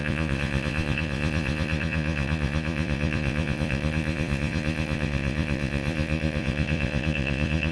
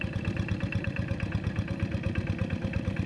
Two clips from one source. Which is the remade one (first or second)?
first